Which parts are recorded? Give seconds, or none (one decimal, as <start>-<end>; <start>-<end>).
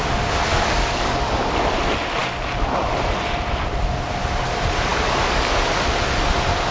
0.0-0.5; 1.3-4.9; 5.6-6.7